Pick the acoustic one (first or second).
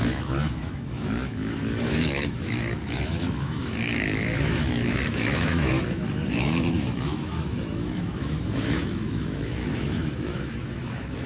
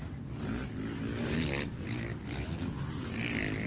second